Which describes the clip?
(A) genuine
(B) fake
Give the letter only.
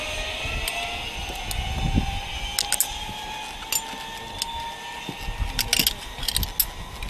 A